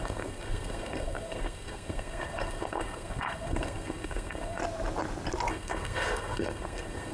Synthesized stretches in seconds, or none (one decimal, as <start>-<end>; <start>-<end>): 0.0-4.6; 5.5-7.1